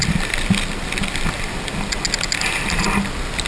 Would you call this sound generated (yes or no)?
no